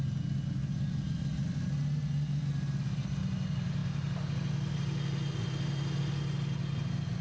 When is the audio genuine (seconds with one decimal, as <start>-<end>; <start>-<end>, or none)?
0.0-7.2